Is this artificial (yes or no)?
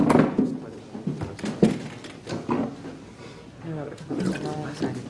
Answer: no